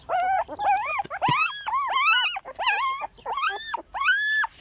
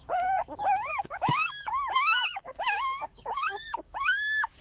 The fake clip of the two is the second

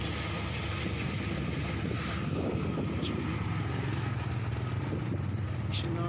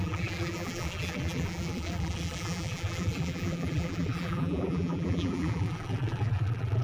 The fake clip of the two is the second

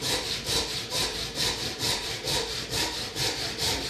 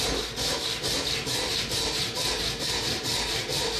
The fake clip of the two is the first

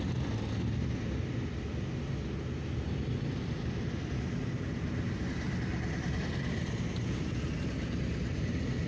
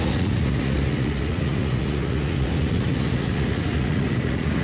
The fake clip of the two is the second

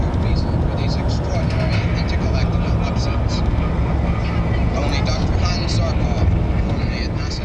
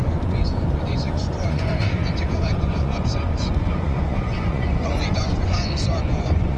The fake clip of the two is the second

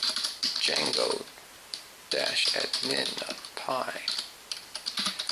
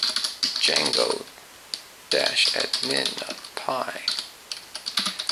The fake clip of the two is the first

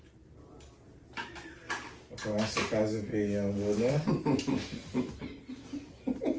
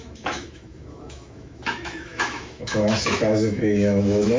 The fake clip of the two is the second